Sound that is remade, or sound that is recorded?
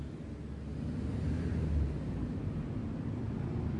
recorded